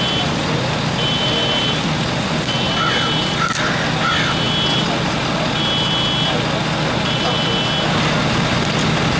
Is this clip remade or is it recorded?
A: recorded